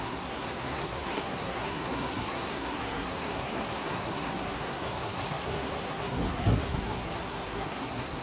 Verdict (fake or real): fake